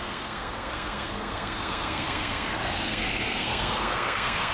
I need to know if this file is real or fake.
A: fake